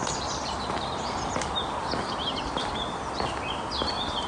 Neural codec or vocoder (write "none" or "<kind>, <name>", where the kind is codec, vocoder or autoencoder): none